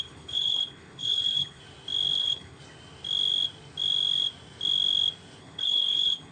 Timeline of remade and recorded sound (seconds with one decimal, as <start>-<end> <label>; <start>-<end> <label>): 0.0-1.6 remade; 1.6-2.2 recorded; 2.2-2.6 remade; 2.6-5.4 recorded; 5.4-6.3 remade